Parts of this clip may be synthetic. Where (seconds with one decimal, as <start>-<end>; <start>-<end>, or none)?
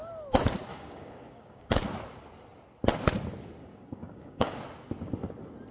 0.7-1.7; 3.6-4.6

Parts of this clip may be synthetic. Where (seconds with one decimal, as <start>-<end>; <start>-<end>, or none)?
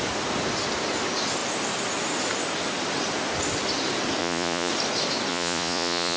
4.2-4.7; 5.3-6.2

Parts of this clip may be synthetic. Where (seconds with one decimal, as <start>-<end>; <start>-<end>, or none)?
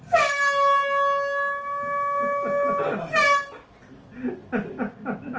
none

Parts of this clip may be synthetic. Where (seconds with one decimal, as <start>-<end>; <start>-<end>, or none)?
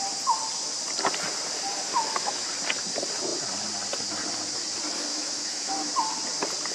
1.9-2.5; 5.1-5.7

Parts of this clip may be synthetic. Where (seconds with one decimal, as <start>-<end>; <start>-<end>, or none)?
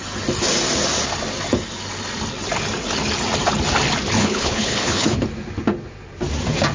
4.2-5.2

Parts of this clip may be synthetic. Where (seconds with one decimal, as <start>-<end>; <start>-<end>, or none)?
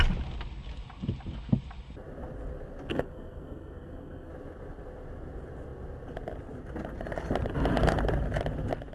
2.9-4.3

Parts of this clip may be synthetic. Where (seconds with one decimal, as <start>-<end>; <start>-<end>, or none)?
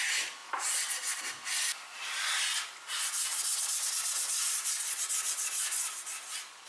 none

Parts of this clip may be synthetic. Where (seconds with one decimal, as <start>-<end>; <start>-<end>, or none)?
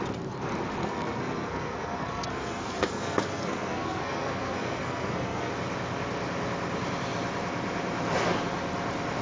0.8-5.5